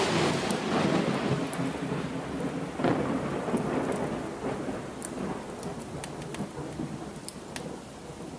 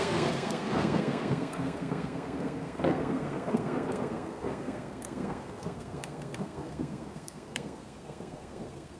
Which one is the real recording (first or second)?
first